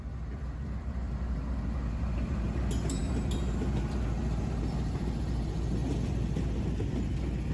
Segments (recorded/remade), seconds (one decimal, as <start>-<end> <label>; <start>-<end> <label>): 0.0-7.5 recorded